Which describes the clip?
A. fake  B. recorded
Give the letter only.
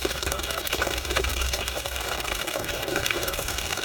A